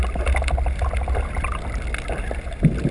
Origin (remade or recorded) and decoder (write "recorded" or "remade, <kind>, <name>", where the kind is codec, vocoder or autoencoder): recorded